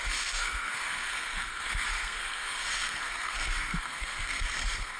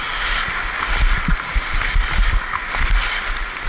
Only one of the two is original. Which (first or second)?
second